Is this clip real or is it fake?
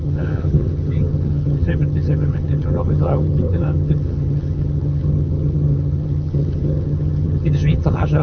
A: fake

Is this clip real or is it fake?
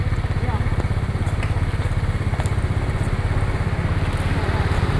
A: real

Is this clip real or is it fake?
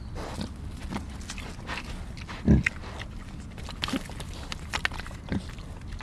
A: real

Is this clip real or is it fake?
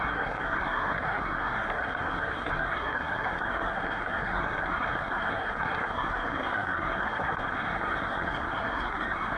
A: fake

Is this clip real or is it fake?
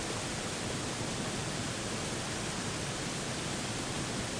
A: real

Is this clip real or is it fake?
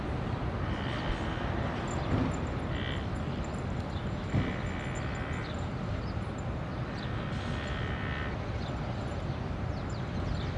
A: real